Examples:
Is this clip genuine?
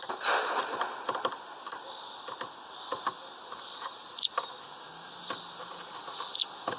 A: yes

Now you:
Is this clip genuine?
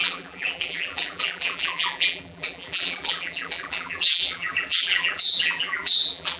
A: no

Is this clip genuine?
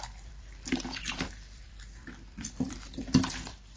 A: no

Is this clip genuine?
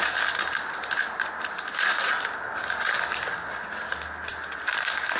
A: yes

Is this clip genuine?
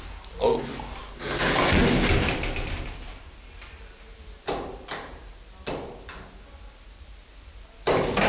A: yes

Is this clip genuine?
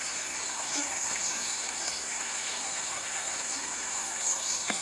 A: no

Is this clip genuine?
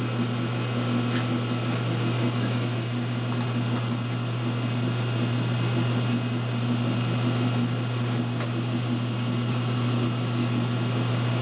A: yes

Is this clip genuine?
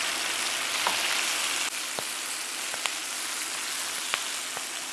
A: yes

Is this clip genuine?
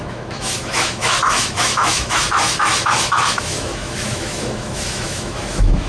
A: no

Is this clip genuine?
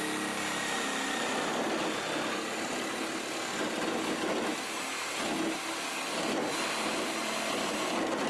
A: yes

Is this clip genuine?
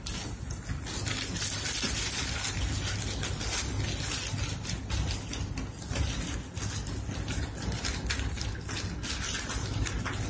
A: yes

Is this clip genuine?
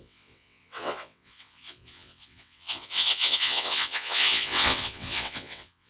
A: no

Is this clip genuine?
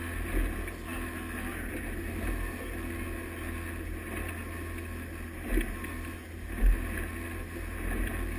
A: yes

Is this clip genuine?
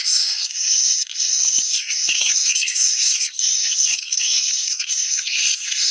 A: no